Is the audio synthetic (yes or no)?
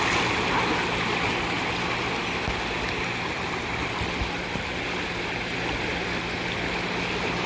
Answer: no